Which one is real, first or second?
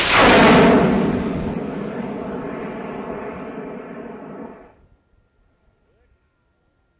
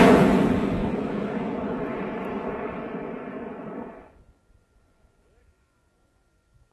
first